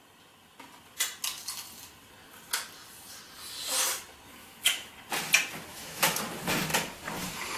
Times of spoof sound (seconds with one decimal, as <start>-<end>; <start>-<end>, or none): 4.4-4.9; 5.7-6.2